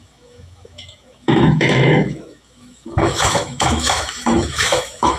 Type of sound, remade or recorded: remade